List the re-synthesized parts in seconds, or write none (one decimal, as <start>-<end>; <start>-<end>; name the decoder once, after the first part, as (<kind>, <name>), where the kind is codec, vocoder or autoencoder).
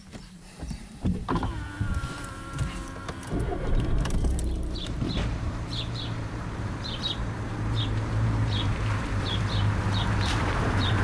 0.0-1.2 (vocoder, BigVGAN v2); 1.8-11.0